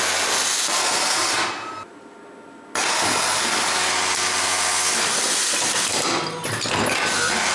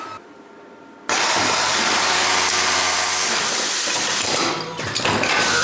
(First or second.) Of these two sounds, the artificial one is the second